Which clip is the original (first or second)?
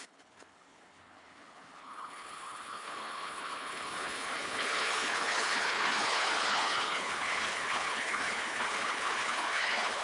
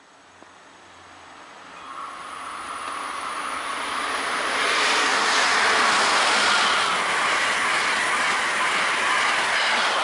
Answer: second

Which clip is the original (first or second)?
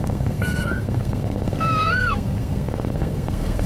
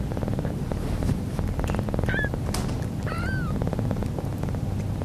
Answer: second